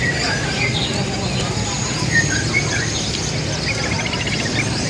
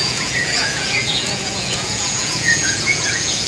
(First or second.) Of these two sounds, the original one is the first